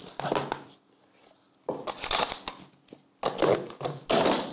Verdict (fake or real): real